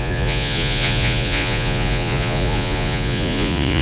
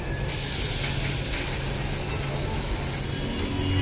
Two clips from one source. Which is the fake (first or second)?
first